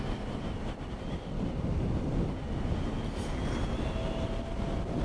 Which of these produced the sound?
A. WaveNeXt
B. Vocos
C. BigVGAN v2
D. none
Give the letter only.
D